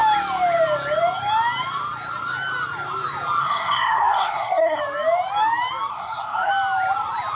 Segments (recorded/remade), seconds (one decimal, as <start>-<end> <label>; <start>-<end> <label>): 0.0-3.4 recorded; 3.4-4.8 remade; 4.8-5.9 recorded; 5.9-6.5 remade; 6.5-7.3 recorded